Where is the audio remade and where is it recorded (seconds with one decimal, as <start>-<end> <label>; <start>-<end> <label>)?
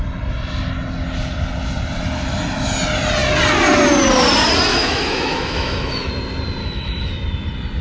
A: 0.0-4.7 recorded; 4.7-6.1 remade; 6.1-6.6 recorded; 6.6-7.1 remade; 7.1-7.8 recorded